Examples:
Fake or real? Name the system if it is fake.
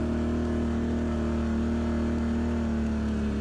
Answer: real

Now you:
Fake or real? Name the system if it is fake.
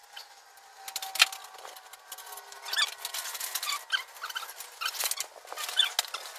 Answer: real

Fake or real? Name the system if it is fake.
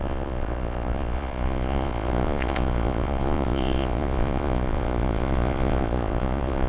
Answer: fake, vocoder, Vocos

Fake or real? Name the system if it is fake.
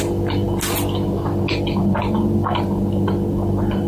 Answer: real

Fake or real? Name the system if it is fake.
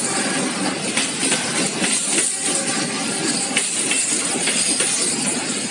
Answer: real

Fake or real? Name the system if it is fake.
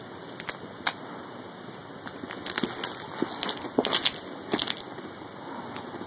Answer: real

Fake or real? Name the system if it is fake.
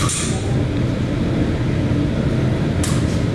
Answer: real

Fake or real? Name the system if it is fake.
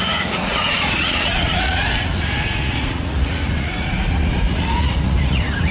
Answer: fake, vocoder, Vocos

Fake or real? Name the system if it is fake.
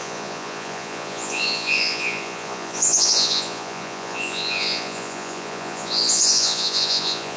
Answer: fake, vocoder, Vocos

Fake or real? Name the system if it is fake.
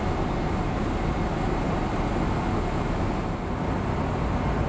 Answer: real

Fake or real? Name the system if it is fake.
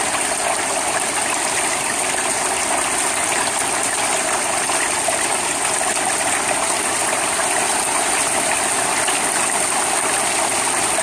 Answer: real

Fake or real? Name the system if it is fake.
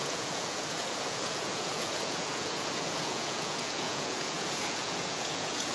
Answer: fake, vocoder, Vocos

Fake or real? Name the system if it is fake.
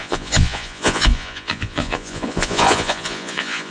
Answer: fake, vocoder, Vocos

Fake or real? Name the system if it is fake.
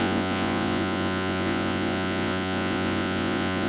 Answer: fake, vocoder, Vocos